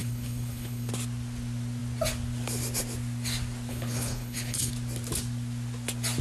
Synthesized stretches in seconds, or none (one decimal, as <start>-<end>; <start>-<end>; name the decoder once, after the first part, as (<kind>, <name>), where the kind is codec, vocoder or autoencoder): 0.0-0.9 (codec, HILCodec); 3.7-4.7